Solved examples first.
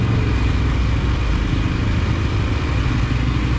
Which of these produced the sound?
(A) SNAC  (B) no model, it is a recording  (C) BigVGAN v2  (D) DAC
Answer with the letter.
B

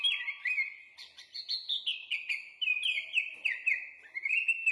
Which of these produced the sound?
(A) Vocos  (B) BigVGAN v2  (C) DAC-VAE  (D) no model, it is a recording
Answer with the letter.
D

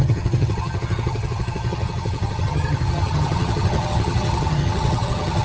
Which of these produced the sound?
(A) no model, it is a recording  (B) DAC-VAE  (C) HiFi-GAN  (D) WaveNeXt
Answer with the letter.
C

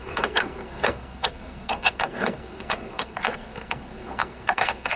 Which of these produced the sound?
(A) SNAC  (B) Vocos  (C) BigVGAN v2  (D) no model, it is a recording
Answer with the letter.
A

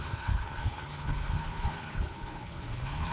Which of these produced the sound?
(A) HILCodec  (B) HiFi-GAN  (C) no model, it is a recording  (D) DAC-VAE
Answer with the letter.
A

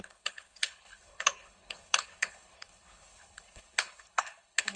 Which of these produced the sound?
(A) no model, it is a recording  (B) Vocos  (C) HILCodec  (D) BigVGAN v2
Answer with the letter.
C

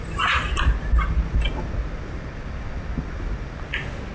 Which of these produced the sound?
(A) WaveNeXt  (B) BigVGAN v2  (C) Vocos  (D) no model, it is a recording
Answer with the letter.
D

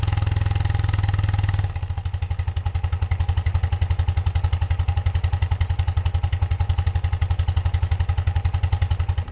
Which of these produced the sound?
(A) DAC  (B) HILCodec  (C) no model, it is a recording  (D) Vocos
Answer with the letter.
C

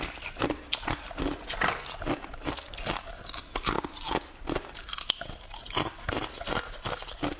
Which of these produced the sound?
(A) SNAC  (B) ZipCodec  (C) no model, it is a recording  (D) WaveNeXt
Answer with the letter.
C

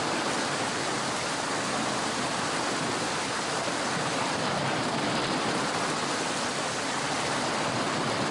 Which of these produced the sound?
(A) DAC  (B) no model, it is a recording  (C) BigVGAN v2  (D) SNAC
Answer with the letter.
B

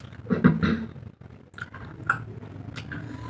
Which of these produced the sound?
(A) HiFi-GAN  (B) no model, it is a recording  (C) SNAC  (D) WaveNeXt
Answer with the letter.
B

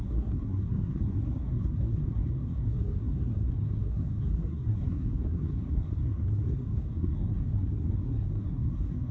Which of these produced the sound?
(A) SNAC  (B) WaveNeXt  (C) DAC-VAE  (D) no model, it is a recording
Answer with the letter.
A